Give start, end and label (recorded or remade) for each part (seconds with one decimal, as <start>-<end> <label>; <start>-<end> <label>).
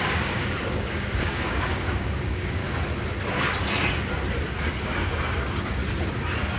0.0-2.6 remade; 2.6-4.7 recorded; 4.7-5.8 remade; 5.8-6.6 recorded